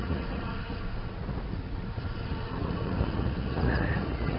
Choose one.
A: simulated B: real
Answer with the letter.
A